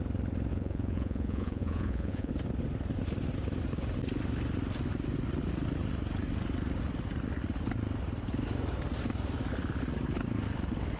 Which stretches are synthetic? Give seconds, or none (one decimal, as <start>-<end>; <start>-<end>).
0.5-2.3